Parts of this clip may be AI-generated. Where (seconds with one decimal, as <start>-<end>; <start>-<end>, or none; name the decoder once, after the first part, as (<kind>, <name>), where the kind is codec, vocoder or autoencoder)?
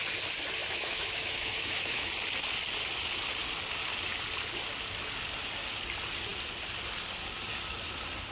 0.6-2.1 (autoencoder, DAC-VAE)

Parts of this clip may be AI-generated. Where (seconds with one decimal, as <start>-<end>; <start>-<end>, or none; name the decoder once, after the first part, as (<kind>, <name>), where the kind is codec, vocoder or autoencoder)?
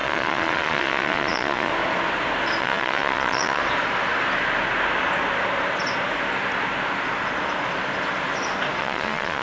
0.0-1.7 (vocoder, Vocos); 2.6-3.6; 8.8-9.4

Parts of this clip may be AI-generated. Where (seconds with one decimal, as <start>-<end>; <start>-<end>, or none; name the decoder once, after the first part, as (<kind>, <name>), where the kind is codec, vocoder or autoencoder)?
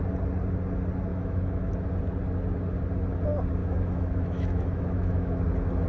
1.1-1.7 (autoencoder, DAC-VAE); 3.6-5.4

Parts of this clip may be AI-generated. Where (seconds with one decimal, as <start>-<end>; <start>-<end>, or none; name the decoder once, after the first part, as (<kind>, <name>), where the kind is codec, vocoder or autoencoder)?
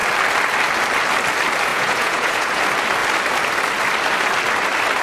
1.7-2.6 (vocoder, Vocos)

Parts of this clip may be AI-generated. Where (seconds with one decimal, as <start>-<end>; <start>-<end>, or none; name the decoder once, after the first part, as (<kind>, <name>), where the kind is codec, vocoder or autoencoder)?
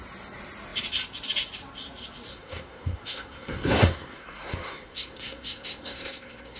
2.3-6.6 (codec, SNAC)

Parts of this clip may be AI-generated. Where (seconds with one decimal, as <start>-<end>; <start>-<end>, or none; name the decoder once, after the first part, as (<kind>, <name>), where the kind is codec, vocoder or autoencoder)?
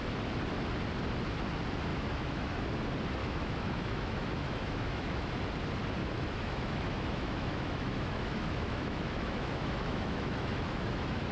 1.9-2.6 (autoencoder, DAC-VAE); 3.2-5.3; 6.0-11.3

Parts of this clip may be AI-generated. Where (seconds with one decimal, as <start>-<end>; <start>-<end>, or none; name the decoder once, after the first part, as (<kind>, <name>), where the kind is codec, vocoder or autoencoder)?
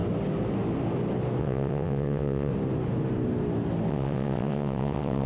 1.4-2.5 (vocoder, WaveNeXt); 3.9-5.3